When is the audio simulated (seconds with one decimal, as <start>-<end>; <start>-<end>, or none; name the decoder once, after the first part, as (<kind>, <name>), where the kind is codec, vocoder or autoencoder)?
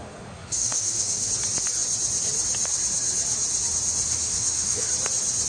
0.0-1.3 (autoencoder, DAC-VAE); 4.1-4.9